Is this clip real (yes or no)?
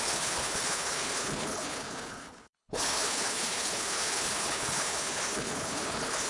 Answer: no